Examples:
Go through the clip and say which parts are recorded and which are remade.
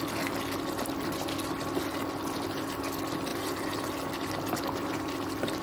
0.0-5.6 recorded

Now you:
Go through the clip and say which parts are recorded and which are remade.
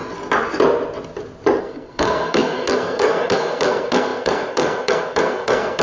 0.0-1.6 recorded; 1.6-5.8 remade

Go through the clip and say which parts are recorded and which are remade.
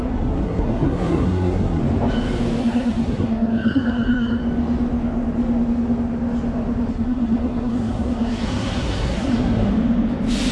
0.0-1.8 remade; 1.8-2.6 recorded; 2.6-4.4 remade; 4.4-6.9 recorded; 6.9-9.7 remade; 9.7-10.5 recorded